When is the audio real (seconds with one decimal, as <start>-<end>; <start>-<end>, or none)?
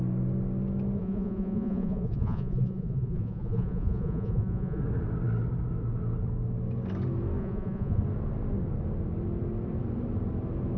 0.0-1.0; 4.8-7.4; 8.0-10.8